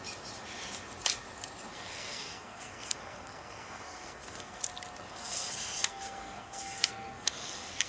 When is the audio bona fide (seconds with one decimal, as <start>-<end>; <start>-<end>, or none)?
0.0-1.7; 4.6-5.1